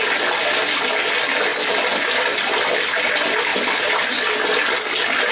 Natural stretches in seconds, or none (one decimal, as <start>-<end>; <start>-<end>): 0.0-5.3